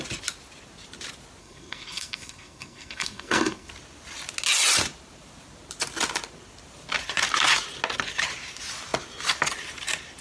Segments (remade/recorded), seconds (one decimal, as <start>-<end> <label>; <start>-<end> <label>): 0.0-1.4 recorded; 1.4-3.7 remade; 3.7-10.2 recorded